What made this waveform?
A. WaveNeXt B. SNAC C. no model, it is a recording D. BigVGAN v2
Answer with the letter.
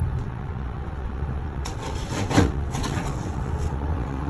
A